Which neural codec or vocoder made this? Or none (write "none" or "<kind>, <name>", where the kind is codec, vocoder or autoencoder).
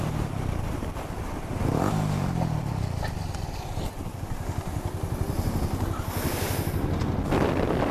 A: vocoder, BigVGAN v2